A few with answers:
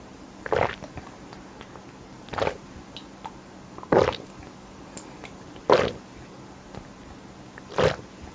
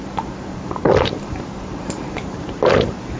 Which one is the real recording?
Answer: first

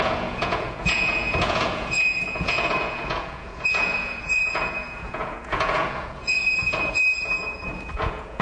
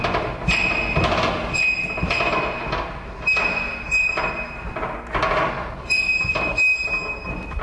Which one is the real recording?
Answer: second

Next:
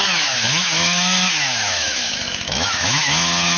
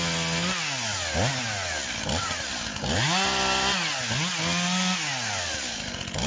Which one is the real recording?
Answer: second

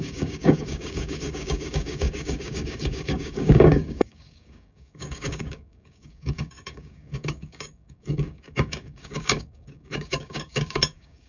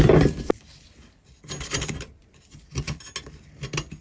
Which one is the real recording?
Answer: second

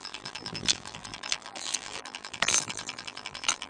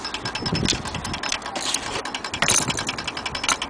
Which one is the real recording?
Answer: second